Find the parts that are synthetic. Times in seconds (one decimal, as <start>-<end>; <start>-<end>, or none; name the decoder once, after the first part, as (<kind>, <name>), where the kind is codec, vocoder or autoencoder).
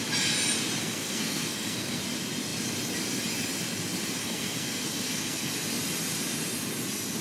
0.8-2.0 (codec, SNAC); 4.2-5.5